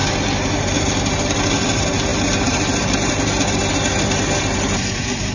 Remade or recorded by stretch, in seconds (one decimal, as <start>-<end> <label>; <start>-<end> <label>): 0.0-0.6 recorded; 0.6-3.6 remade; 3.6-4.5 recorded; 4.5-5.3 remade